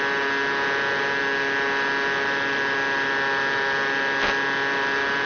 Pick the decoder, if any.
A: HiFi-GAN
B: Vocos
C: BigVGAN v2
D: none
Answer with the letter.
D